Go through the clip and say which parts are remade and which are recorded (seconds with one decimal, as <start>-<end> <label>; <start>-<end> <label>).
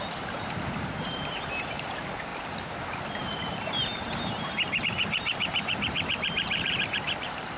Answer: 0.0-7.6 remade